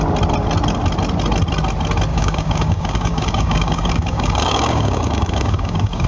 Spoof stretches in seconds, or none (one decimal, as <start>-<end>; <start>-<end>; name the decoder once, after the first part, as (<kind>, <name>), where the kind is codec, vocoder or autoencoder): 2.1-6.1 (codec, DAC)

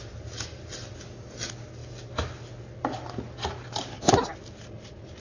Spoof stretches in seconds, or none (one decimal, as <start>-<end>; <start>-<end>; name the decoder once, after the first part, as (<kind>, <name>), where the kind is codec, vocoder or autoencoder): none

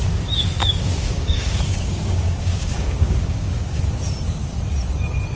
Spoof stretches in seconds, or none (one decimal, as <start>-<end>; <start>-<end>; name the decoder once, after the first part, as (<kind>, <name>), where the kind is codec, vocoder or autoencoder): 0.6-3.8 (codec, DAC)

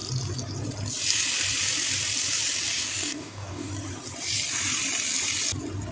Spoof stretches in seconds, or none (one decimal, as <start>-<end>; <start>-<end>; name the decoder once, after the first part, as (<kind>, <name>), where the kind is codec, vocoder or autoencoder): 2.7-3.7 (codec, DAC)

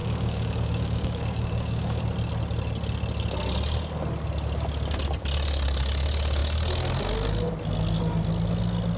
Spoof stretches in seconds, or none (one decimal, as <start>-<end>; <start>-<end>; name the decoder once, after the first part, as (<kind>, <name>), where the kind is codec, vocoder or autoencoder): 0.0-2.0 (codec, DAC)

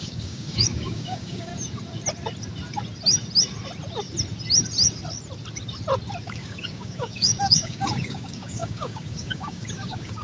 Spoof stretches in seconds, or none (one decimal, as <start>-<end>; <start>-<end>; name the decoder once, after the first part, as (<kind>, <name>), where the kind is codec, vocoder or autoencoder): 0.0-1.5 (codec, DAC); 6.2-10.2

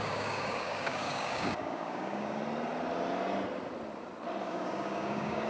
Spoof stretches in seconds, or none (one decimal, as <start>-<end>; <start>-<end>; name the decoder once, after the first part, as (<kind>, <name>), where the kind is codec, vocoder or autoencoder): 0.0-2.4 (codec, DAC); 4.4-5.5